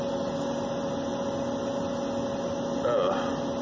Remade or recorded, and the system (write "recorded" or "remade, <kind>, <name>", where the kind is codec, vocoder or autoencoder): recorded